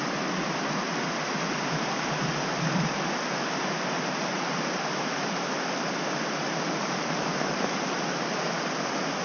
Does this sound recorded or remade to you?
recorded